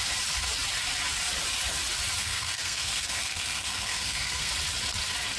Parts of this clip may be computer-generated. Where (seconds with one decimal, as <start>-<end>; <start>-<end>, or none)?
2.2-4.5